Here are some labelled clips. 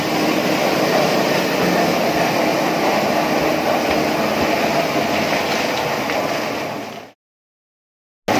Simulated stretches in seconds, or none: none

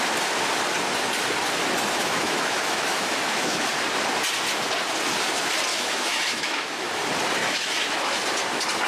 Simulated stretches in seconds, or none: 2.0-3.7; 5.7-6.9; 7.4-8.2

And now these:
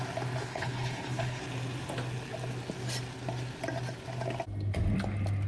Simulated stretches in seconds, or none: 0.4-1.4

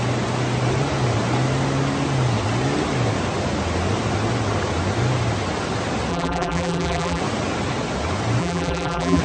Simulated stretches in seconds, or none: 6.1-7.2; 8.4-9.2

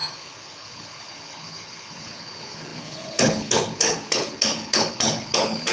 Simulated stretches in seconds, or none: 0.0-5.7